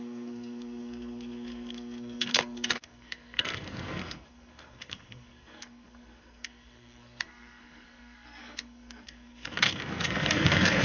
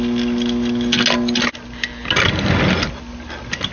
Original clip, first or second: second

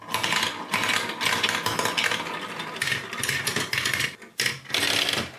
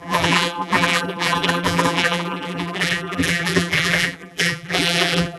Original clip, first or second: first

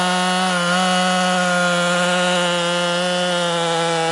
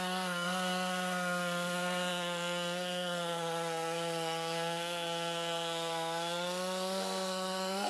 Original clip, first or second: first